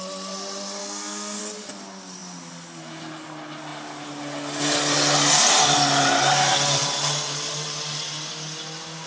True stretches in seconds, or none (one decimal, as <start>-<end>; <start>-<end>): 0.0-0.8; 1.4-9.1